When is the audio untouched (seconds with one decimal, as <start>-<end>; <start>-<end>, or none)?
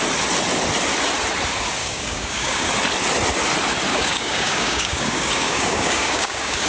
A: 0.0-1.8; 2.7-3.9